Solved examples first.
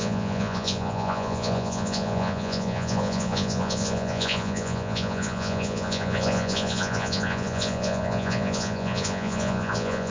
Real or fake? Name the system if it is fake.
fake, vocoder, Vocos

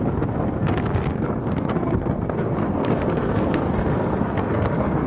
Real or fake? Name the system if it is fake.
fake, codec, SNAC